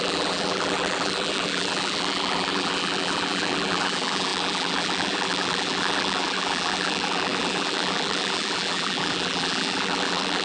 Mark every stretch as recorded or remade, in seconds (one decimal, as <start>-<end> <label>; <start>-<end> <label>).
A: 0.0-10.4 remade